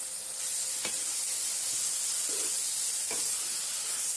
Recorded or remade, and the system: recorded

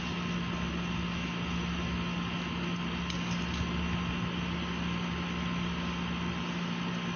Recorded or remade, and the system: recorded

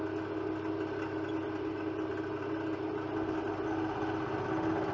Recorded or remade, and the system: recorded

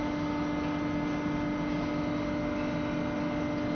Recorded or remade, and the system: recorded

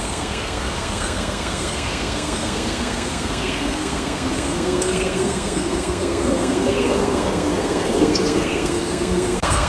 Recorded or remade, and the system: remade, codec, SNAC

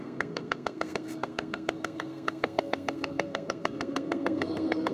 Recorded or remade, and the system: remade, codec, SNAC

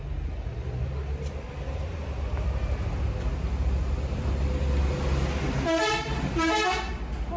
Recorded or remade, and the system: recorded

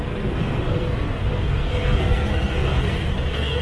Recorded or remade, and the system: remade, codec, SNAC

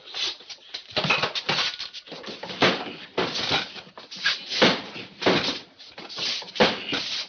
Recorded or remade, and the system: recorded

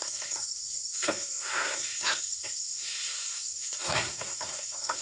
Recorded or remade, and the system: remade, codec, SNAC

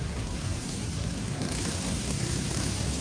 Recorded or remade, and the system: remade, codec, SNAC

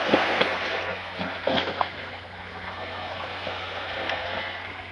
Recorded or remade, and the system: remade, codec, SNAC